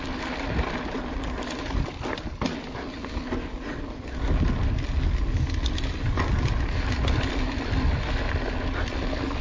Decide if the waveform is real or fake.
real